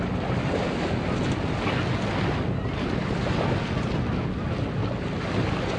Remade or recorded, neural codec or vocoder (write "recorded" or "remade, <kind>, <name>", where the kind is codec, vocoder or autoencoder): recorded